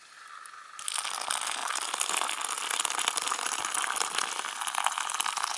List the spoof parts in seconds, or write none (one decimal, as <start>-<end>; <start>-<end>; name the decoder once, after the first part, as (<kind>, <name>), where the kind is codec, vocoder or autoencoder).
1.6-4.6 (vocoder, BigVGAN v2)